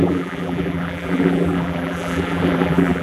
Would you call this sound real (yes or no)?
no